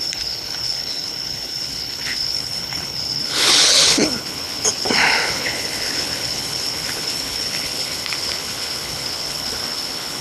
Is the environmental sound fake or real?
fake